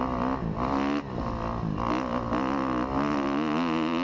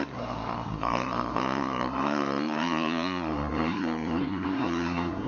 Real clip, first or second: first